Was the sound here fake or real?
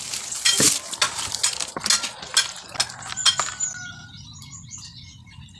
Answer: real